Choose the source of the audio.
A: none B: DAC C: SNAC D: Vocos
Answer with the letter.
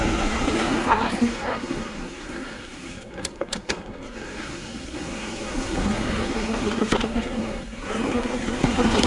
C